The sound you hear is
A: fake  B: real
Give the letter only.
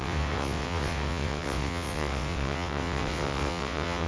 A